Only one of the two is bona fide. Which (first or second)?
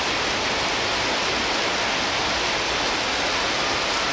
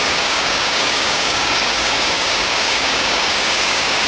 first